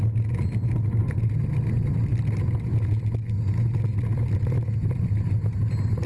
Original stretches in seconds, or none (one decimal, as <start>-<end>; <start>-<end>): 0.0-6.1